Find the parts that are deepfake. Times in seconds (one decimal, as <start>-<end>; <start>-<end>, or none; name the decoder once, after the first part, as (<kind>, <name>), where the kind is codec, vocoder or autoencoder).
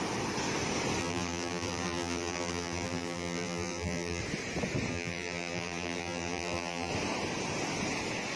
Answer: 1.0-4.2 (vocoder, BigVGAN v2); 4.9-6.9